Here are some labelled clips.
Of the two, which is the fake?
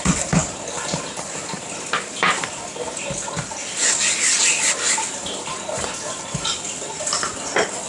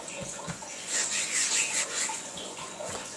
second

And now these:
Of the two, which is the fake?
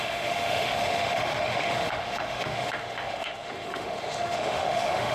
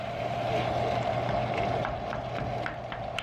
first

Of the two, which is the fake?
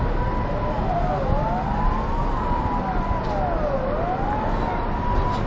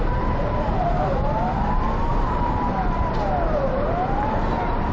second